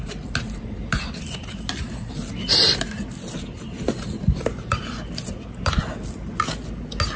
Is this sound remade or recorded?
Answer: recorded